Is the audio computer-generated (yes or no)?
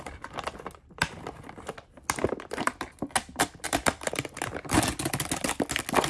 no